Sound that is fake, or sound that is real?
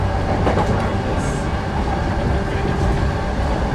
real